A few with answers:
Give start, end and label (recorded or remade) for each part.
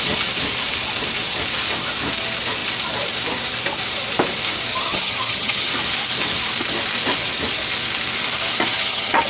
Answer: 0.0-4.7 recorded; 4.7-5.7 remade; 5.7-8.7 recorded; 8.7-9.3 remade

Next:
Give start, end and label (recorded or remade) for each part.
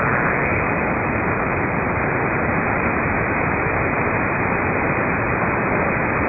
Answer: 0.0-6.3 recorded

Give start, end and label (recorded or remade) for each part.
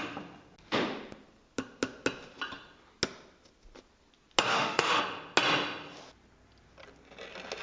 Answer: 0.0-4.5 recorded; 4.5-5.0 remade; 5.0-7.6 recorded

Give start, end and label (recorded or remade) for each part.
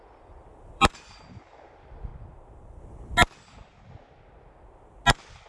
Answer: 0.0-0.5 recorded; 0.5-1.2 remade; 1.2-2.1 recorded; 2.1-2.8 remade; 2.8-5.5 recorded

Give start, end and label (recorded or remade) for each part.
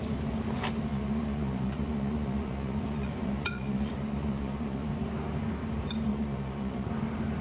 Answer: 0.0-0.9 recorded; 0.9-4.9 remade; 4.9-6.1 recorded; 6.1-6.9 remade; 6.9-7.4 recorded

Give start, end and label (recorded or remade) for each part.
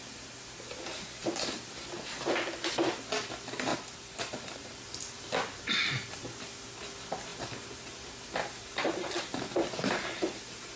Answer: 0.0-3.7 recorded; 3.7-4.8 remade; 4.8-8.6 recorded; 8.6-10.2 remade; 10.2-10.8 recorded